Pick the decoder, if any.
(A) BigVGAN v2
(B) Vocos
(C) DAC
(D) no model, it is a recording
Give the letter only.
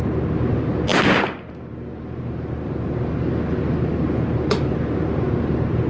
D